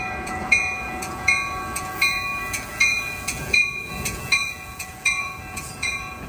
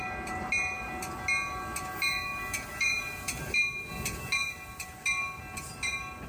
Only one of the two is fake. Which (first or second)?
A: first